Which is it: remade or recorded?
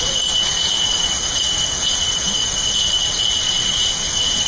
remade